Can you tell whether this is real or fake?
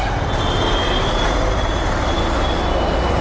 real